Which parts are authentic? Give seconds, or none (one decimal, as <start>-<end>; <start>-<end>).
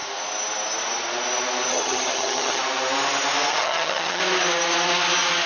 0.0-1.7; 2.6-3.5; 4.2-5.5